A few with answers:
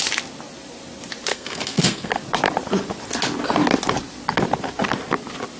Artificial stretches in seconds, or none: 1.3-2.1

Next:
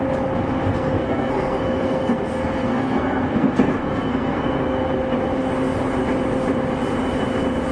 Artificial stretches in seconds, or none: 0.7-4.8

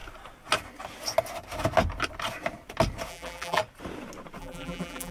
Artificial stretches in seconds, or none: 3.1-3.6; 4.4-5.1

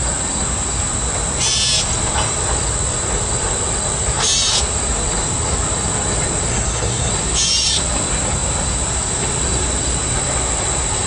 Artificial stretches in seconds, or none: 6.5-7.1

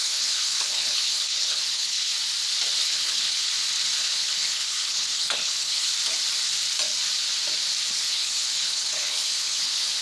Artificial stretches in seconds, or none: 0.0-2.1; 2.8-3.5; 4.1-5.9; 7.9-10.0